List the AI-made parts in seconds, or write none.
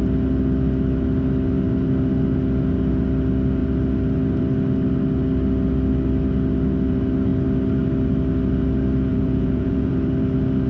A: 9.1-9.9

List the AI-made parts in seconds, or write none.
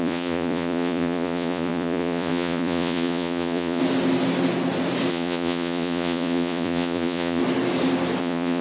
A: 0.0-3.8; 5.1-7.4; 8.2-8.6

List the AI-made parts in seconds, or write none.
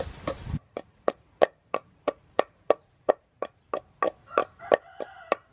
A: 0.6-3.6